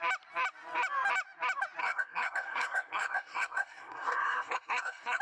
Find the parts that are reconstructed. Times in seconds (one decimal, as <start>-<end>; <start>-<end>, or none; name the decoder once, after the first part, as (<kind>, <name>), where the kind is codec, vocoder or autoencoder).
1.8-5.2 (codec, SNAC)